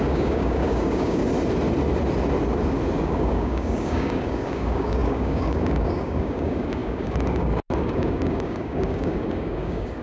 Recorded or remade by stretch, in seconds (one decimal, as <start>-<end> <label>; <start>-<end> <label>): 0.0-1.2 remade; 1.2-3.0 recorded; 3.0-10.0 remade